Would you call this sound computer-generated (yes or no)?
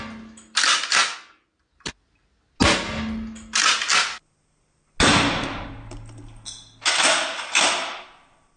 no